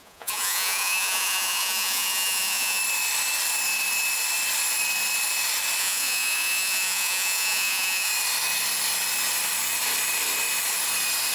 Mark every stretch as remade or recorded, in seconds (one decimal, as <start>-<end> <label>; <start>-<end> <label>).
0.0-2.8 remade; 2.8-5.8 recorded; 5.8-8.1 remade; 8.1-11.3 recorded

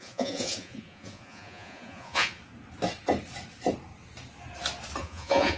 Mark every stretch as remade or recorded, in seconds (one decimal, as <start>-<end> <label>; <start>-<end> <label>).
0.0-2.4 remade; 2.4-5.0 recorded; 5.0-5.6 remade

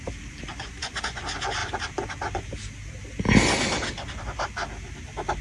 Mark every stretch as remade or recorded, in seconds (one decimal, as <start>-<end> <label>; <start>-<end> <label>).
0.0-0.5 recorded; 0.5-1.2 remade; 1.2-5.4 recorded